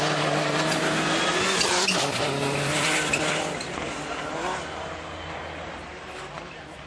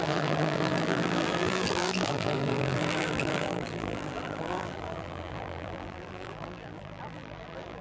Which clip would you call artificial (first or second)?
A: second